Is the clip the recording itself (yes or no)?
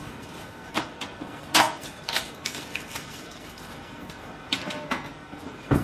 no